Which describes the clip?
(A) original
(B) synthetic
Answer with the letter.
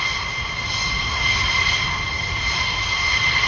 A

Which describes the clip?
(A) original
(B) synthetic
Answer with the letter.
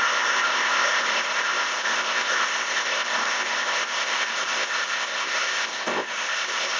B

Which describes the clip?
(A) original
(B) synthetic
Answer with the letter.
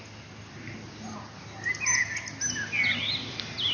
A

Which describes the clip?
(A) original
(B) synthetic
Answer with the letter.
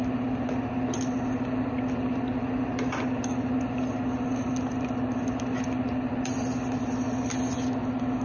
A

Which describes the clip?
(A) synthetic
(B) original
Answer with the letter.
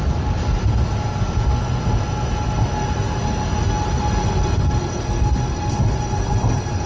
B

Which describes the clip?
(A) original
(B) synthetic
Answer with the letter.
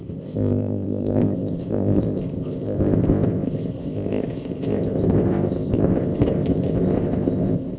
B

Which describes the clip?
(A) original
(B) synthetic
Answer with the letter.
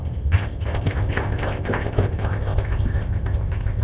B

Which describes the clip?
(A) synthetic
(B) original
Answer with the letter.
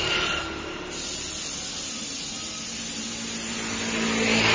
B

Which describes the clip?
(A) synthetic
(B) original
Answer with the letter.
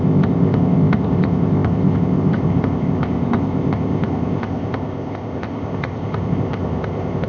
A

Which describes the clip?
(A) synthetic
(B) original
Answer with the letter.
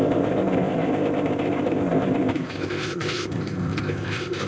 A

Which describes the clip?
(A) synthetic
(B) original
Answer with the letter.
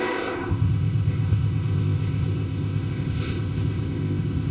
A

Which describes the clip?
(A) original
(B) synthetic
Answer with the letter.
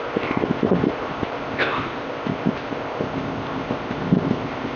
B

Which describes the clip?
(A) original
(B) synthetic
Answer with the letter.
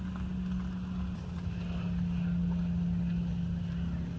A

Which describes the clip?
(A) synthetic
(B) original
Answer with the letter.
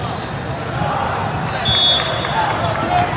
B